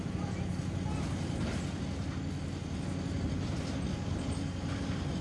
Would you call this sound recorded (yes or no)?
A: yes